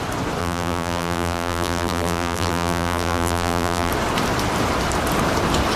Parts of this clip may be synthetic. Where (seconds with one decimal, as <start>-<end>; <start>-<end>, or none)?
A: 0.4-3.9